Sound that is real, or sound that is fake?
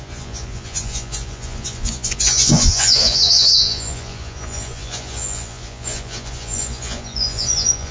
fake